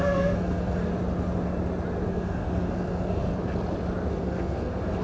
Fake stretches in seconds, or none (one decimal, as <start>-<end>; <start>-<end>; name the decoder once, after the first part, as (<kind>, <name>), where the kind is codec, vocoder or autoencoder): 0.0-0.9 (codec, SNAC); 2.1-3.3; 4.1-5.0